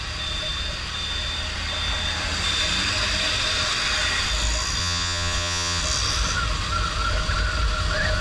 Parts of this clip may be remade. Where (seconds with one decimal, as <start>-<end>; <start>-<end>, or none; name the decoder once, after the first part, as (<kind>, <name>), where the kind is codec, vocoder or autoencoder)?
4.8-5.8 (vocoder, Vocos)